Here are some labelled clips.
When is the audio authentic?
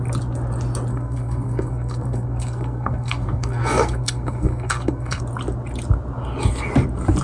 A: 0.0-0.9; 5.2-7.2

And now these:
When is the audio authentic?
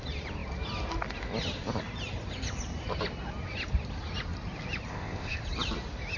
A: 0.0-4.9; 5.4-6.2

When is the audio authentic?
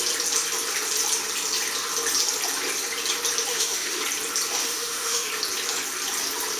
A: 0.0-3.5; 4.0-4.6; 5.3-6.6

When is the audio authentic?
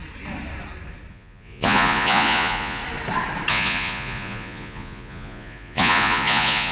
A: 0.0-1.1; 2.8-3.5